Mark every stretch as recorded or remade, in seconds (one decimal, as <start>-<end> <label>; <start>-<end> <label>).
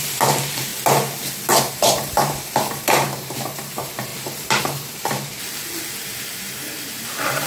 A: 0.0-0.7 remade; 0.7-1.7 recorded; 1.7-5.3 remade; 5.3-6.3 recorded; 6.3-7.5 remade